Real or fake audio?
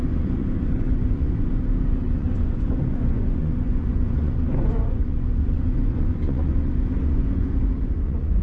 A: fake